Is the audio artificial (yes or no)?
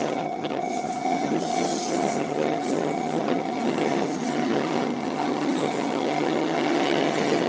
yes